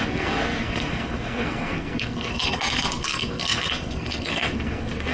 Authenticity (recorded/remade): remade